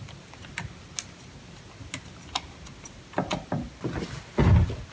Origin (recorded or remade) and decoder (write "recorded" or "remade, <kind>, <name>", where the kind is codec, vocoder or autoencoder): recorded